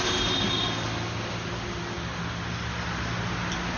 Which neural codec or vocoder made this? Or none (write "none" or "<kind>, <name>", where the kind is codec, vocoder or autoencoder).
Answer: none